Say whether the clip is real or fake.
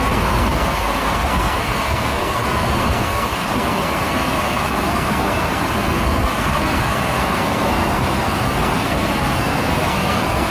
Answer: fake